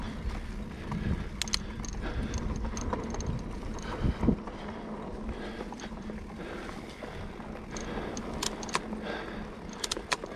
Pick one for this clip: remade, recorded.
recorded